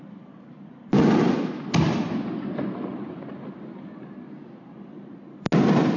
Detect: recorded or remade recorded